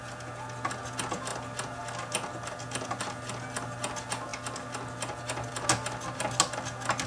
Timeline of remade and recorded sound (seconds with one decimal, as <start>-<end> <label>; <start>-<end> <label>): 0.0-7.1 recorded